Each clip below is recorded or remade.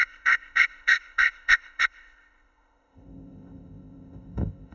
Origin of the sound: remade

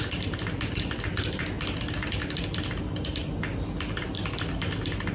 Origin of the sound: recorded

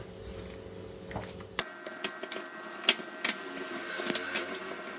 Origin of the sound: recorded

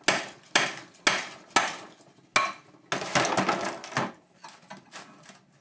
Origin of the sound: recorded